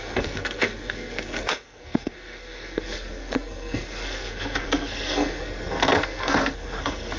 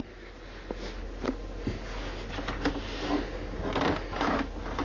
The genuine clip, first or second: second